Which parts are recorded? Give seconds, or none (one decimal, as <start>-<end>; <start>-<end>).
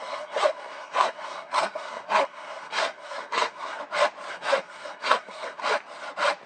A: 3.8-4.3; 5.6-6.5